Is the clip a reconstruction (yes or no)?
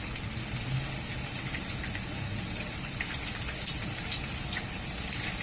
no